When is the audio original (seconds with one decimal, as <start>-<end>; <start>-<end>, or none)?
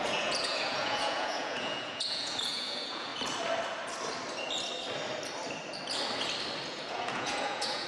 3.1-6.7